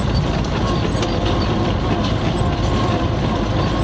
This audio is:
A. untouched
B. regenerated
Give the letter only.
B